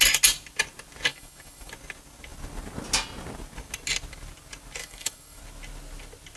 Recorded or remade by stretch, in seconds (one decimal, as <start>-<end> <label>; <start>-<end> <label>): 0.0-1.1 recorded; 1.1-1.7 remade; 1.7-4.8 recorded; 4.8-5.4 remade; 5.4-6.4 recorded